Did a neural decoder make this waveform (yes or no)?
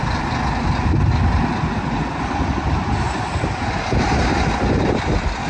no